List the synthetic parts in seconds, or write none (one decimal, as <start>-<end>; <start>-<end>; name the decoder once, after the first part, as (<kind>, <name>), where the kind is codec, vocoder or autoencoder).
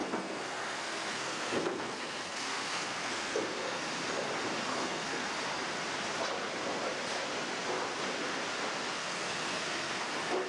0.0-3.8 (codec, SNAC); 4.7-5.3; 9.0-10.1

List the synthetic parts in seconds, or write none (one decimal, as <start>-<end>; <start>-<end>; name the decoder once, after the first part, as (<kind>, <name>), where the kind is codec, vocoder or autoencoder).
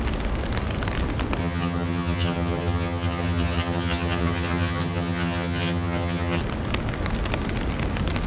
1.4-6.4 (vocoder, HiFi-GAN)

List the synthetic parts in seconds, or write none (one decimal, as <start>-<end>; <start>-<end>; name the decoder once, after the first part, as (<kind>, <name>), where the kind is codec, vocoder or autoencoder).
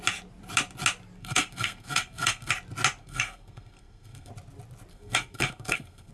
1.2-2.5 (codec, SNAC); 3.0-4.3; 4.9-6.1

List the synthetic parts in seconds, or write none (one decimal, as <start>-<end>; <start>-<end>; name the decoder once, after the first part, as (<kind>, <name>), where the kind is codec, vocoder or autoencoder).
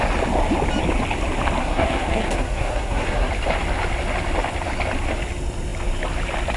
1.6-3.3 (codec, SNAC)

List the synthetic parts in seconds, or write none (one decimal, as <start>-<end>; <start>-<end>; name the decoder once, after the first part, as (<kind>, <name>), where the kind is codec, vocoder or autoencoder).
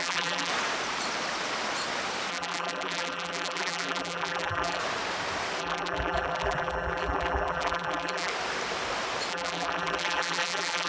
0.0-0.5 (vocoder, BigVGAN v2); 2.3-4.8; 5.6-8.3; 9.3-10.9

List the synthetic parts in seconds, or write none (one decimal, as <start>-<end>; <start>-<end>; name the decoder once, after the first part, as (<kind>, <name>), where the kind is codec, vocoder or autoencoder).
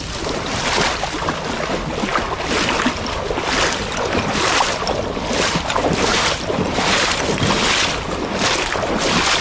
6.1-7.2 (vocoder, BigVGAN v2)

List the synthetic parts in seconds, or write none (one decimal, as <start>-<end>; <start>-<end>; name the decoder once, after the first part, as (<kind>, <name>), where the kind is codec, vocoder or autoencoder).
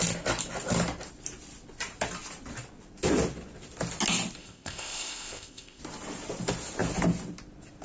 4.4-5.8 (codec, ZipCodec)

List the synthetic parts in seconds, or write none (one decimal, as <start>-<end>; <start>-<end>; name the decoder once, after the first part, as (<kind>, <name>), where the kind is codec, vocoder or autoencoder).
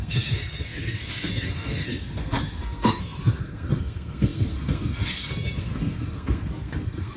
0.0-7.2 (codec, SNAC)